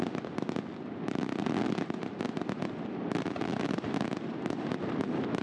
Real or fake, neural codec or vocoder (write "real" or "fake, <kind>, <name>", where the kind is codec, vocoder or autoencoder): fake, vocoder, BigVGAN v2